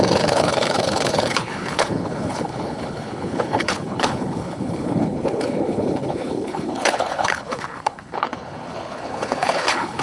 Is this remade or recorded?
remade